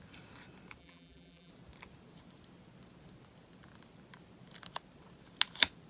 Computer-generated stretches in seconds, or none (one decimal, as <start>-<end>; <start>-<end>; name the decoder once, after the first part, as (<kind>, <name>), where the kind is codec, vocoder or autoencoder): 0.8-1.5 (vocoder, BigVGAN v2)

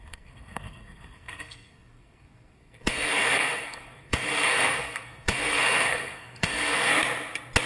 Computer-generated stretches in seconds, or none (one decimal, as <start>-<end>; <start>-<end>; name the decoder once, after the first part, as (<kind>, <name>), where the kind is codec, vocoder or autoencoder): 0.0-6.9 (codec, SNAC)

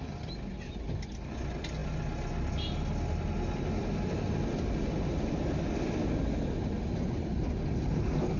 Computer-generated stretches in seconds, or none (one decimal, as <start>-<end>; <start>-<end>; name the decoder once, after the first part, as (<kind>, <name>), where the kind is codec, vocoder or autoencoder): none

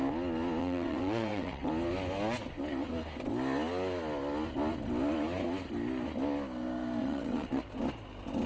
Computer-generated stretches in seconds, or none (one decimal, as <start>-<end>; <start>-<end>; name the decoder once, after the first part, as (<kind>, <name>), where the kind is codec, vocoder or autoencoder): 0.6-1.7 (vocoder, WaveNeXt); 7.0-7.6

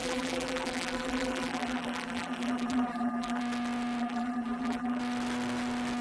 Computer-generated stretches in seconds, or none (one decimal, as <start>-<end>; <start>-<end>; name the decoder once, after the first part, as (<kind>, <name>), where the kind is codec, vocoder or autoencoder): 0.0-3.4 (vocoder, BigVGAN v2); 4.0-5.0

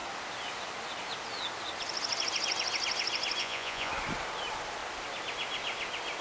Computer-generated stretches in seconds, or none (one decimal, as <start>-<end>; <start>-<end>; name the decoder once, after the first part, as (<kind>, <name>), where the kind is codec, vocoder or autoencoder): 3.4-3.9 (vocoder, Vocos)

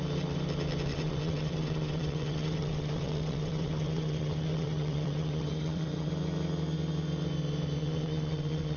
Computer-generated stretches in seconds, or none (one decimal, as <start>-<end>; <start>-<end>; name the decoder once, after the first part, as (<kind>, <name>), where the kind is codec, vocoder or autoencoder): 0.9-6.1 (vocoder, WaveNeXt); 7.8-8.8

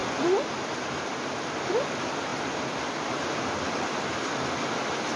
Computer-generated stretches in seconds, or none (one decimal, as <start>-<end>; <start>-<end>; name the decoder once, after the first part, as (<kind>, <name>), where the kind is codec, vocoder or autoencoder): none